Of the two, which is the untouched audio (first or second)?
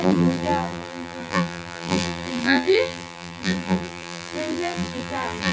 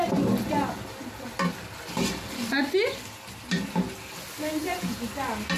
second